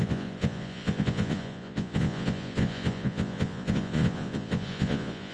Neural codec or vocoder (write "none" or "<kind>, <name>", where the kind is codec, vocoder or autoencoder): vocoder, Vocos